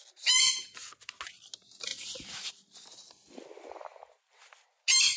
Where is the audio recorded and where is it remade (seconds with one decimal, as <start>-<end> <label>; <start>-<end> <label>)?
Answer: 0.0-5.2 recorded